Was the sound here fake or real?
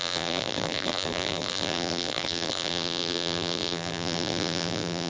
fake